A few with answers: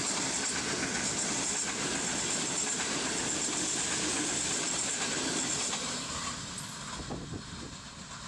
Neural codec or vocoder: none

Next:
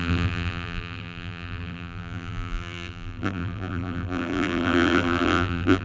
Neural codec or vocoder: vocoder, BigVGAN v2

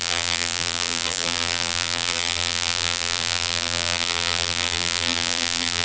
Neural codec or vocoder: vocoder, BigVGAN v2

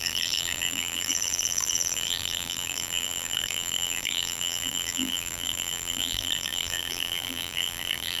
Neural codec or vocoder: vocoder, BigVGAN v2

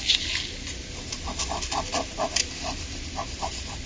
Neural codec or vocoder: none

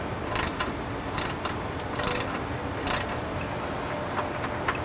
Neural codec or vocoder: none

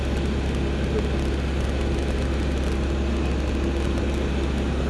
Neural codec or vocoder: none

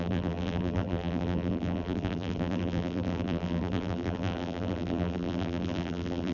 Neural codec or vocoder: vocoder, BigVGAN v2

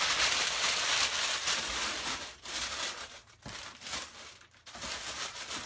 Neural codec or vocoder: none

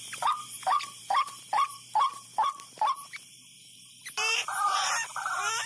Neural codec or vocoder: vocoder, BigVGAN v2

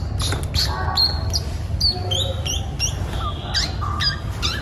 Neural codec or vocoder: none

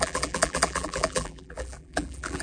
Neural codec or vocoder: vocoder, BigVGAN v2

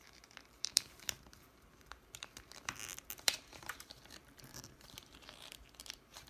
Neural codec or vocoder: vocoder, BigVGAN v2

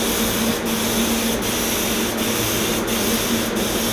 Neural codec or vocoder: none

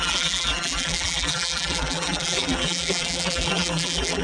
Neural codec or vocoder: vocoder, BigVGAN v2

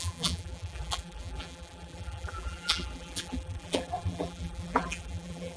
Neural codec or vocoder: vocoder, BigVGAN v2